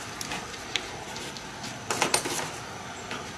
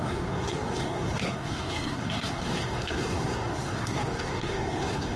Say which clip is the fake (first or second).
second